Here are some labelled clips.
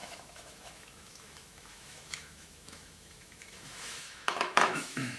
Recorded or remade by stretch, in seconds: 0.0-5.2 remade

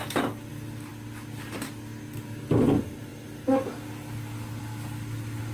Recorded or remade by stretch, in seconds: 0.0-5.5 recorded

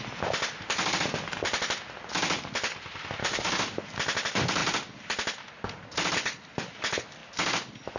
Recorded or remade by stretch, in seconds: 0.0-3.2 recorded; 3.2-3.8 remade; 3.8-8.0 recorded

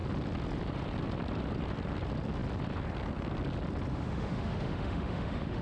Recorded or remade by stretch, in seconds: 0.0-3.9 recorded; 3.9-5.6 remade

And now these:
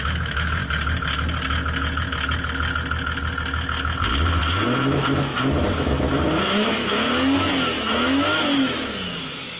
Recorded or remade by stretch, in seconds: 0.0-0.6 remade; 0.6-4.4 recorded; 4.4-9.6 remade